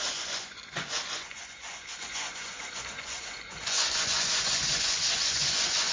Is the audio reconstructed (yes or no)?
yes